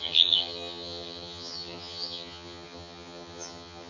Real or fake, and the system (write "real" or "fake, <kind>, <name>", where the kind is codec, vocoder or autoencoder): fake, vocoder, HiFi-GAN